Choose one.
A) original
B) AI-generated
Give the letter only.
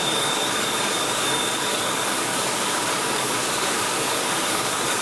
B